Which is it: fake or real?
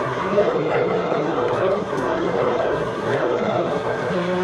fake